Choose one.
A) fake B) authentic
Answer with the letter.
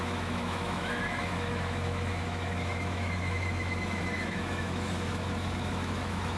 A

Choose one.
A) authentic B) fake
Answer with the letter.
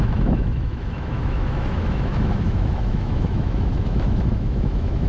B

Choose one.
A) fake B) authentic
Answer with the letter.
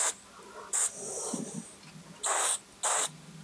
B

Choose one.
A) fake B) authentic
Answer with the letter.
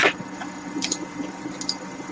B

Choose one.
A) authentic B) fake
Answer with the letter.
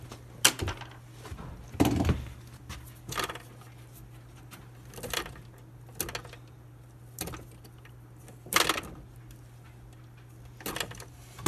A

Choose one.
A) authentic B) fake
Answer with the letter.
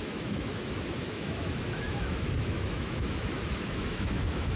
B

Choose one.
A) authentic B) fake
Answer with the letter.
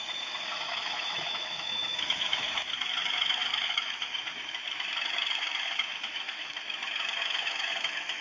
B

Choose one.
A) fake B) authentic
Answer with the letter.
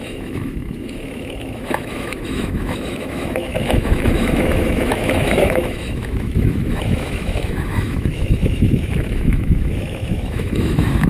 A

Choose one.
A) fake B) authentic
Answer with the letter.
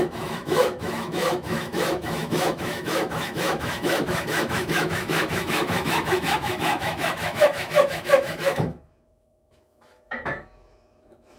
A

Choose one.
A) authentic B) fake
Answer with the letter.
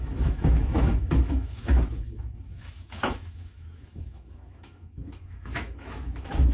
B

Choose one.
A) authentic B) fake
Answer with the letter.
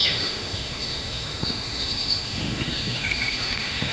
B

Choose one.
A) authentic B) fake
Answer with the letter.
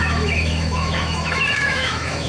B